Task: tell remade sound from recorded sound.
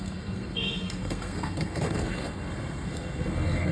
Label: remade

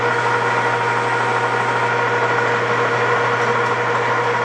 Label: recorded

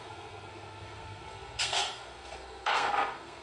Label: remade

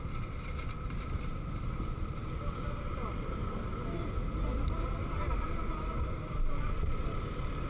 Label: recorded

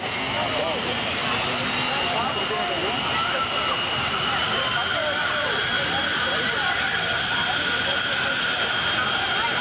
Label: recorded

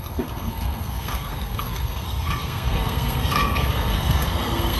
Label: remade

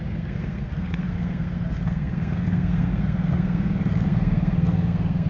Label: remade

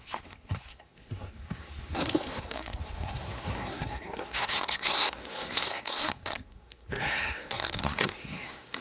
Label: remade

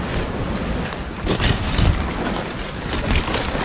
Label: recorded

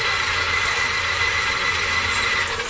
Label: recorded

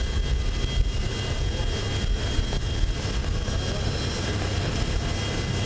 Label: recorded